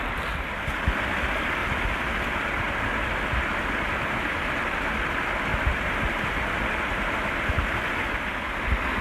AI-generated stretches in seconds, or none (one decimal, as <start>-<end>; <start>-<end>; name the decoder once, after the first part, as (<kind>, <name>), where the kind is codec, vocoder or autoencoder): none